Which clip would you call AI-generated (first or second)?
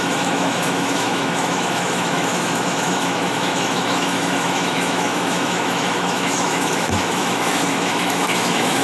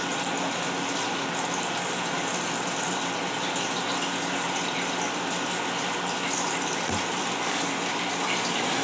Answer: first